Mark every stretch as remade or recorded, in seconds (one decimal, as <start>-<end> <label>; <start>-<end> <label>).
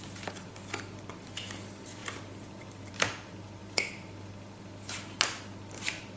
0.0-6.2 recorded